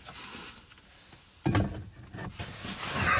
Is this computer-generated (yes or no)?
no